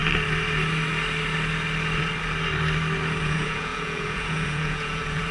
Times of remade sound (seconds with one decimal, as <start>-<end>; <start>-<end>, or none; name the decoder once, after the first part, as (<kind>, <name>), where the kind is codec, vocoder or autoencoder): 3.2-5.3 (vocoder, Vocos)